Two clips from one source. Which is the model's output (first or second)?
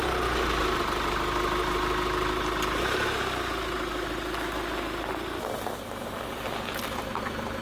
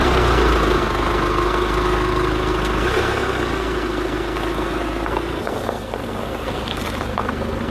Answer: second